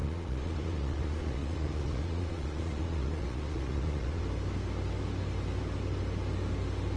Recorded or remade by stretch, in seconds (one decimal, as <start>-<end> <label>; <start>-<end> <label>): 0.0-4.2 remade; 4.2-7.0 recorded